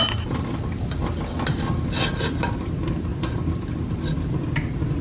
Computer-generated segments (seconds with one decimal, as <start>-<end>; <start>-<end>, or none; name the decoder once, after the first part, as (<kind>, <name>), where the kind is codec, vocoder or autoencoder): none